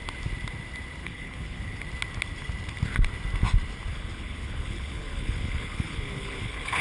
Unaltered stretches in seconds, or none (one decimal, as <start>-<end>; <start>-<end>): 0.0-1.0; 1.8-3.9